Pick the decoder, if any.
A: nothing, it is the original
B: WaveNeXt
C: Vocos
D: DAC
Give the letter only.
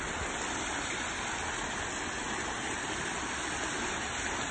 A